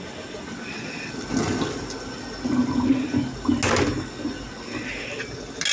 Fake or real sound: real